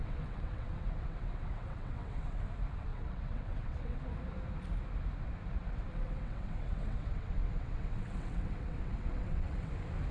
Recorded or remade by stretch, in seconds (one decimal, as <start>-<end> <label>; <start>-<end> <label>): 0.0-2.4 remade; 2.4-2.9 recorded; 2.9-4.0 remade; 4.0-5.6 recorded; 5.6-9.7 remade; 9.7-10.1 recorded